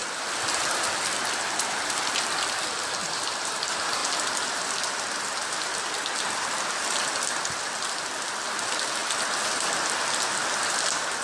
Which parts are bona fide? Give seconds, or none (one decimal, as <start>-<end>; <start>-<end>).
4.0-8.3; 9.0-11.2